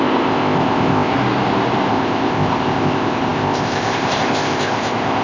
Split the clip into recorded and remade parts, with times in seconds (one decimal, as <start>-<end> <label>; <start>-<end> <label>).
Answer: 0.0-1.1 remade; 1.1-1.9 recorded; 1.9-5.2 remade